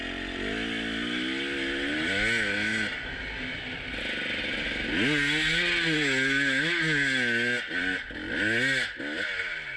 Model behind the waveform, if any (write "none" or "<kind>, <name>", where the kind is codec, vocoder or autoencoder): none